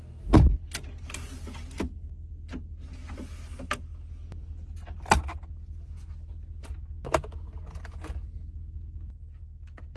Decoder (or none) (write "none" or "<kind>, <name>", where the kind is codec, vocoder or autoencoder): none